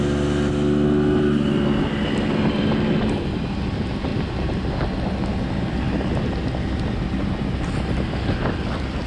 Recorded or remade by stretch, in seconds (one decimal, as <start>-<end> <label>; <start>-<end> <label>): 0.0-4.1 recorded; 4.1-4.7 remade; 4.7-9.1 recorded